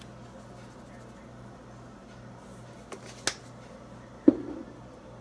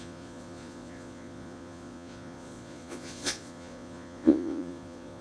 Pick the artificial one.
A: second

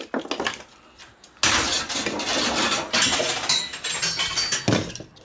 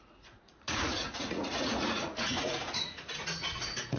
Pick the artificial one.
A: second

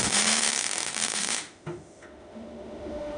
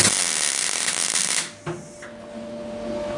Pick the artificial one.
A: first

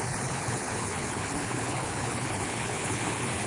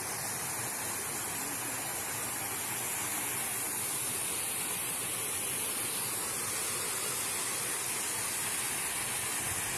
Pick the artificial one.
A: first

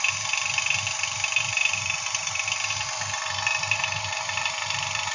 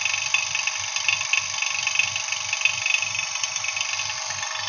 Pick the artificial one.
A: first